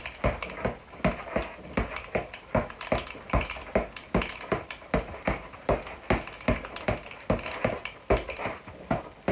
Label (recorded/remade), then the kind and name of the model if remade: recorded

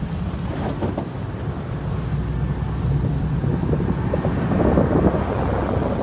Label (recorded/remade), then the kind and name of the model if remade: recorded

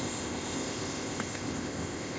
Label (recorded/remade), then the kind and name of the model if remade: remade, codec, ZipCodec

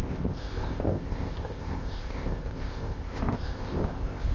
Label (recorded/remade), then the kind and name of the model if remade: remade, codec, ZipCodec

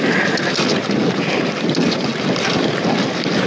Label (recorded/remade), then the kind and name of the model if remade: recorded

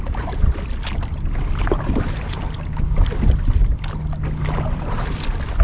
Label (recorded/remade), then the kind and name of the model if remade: recorded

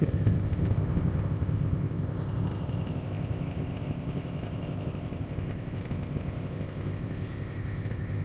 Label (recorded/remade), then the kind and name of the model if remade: remade, codec, ZipCodec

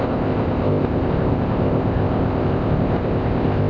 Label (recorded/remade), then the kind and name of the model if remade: remade, codec, ZipCodec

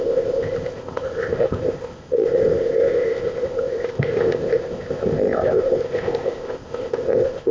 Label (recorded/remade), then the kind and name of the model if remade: remade, codec, ZipCodec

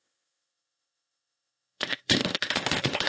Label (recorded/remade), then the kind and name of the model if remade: remade, codec, ZipCodec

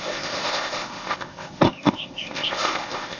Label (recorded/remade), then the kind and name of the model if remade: remade, codec, ZipCodec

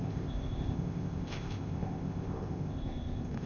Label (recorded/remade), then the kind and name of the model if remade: remade, codec, ZipCodec